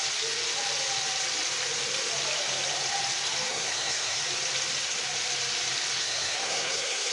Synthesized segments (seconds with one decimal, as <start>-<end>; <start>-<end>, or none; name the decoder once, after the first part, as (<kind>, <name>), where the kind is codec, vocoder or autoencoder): 3.5-4.2 (codec, SNAC); 6.0-7.1